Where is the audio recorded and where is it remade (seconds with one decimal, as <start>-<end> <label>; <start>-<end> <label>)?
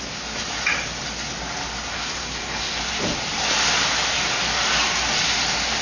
0.0-1.9 recorded; 1.9-2.8 remade; 2.8-5.8 recorded